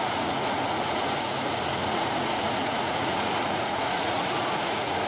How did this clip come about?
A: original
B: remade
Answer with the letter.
B